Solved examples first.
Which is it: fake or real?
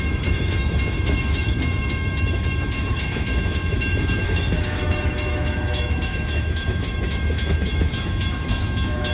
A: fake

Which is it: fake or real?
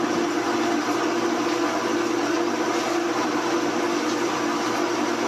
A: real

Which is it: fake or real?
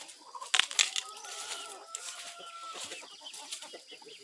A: real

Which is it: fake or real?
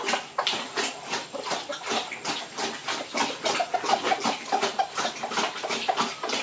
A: real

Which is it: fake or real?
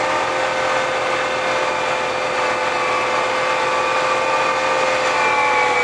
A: real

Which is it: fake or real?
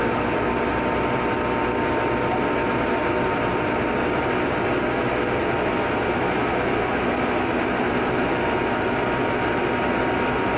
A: real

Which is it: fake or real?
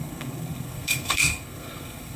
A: fake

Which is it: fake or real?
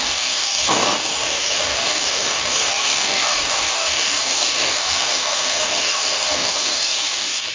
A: fake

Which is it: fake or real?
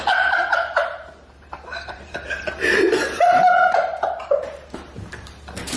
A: fake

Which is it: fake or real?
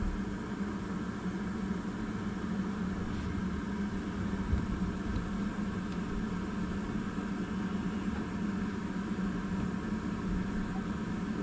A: real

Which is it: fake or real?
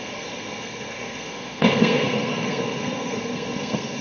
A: fake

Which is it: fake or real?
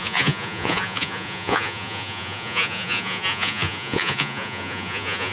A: fake